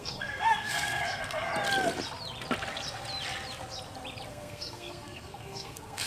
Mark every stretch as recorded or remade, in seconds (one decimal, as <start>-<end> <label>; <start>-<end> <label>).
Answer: 0.0-1.5 remade; 1.5-4.3 recorded; 4.3-6.1 remade